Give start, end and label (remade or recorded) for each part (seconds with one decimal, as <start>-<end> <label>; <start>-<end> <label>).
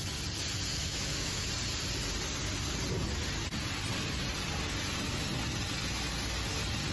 0.0-0.7 recorded; 0.7-1.5 remade; 1.5-6.9 recorded